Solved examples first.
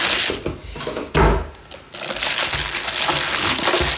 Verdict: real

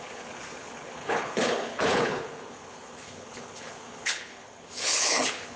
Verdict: fake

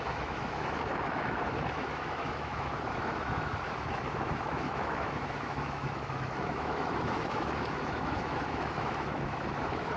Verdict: fake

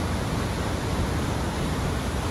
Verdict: real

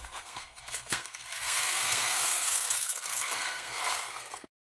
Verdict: fake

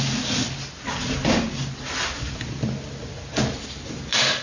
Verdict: real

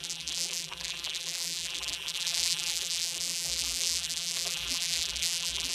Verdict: fake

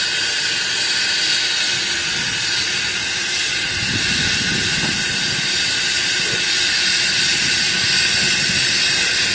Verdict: real